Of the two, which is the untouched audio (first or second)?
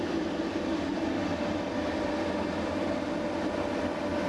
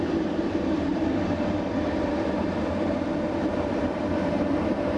first